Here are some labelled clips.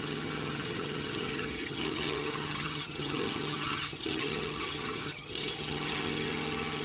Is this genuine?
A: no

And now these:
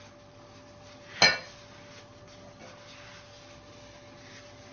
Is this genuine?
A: yes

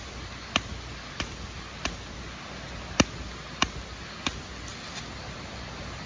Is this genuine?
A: yes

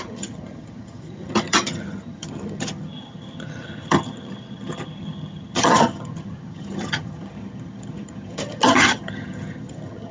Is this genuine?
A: no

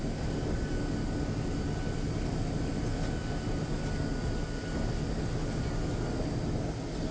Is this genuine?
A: yes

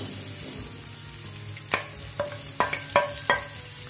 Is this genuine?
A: yes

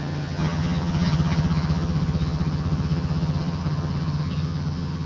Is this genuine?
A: no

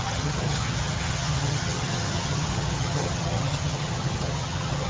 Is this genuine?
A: no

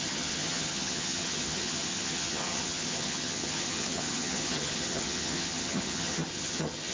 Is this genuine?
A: no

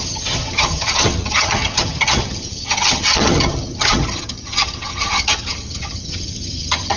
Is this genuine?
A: no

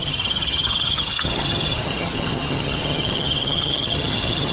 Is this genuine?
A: no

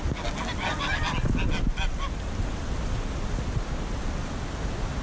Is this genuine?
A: yes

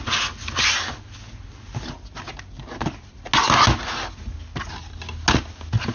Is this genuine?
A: yes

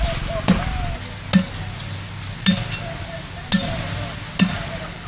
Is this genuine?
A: yes